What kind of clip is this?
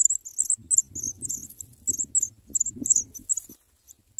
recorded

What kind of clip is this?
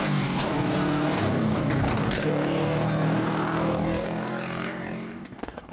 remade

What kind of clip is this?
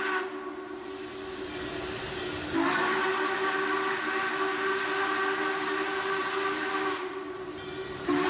recorded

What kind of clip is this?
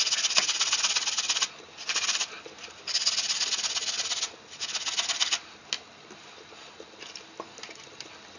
recorded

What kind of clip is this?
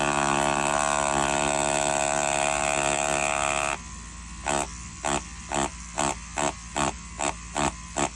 recorded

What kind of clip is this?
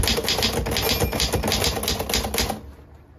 recorded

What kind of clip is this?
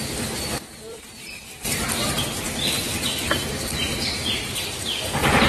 remade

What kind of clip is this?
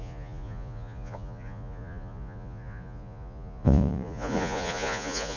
remade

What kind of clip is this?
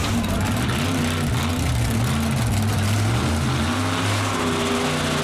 recorded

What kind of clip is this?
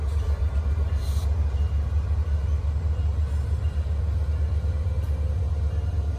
recorded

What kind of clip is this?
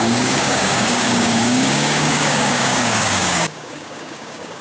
remade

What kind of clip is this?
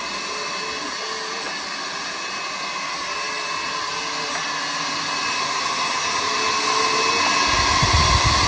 recorded